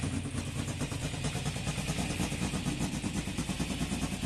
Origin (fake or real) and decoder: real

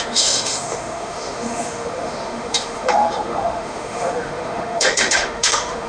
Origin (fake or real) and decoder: fake, autoencoder, DAC-VAE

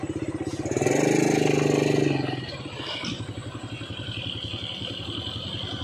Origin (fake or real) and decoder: real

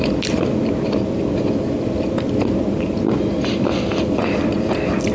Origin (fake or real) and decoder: real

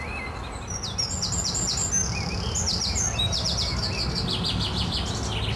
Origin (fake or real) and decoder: real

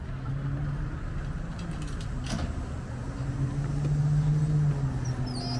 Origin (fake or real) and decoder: real